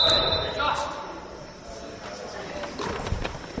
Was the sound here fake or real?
fake